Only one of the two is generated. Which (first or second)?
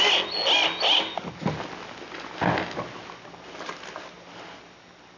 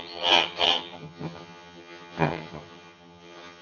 second